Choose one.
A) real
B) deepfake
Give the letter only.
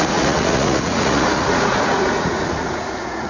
B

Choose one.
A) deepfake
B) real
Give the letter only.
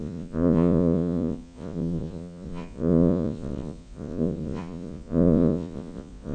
A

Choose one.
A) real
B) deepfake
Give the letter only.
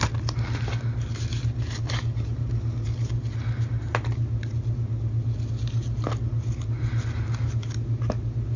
A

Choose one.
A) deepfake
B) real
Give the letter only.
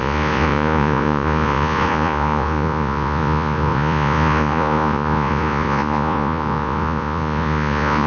A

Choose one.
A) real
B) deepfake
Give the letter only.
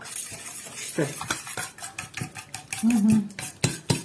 A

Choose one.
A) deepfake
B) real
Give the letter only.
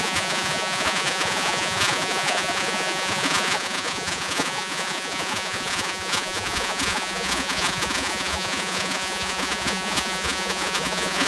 A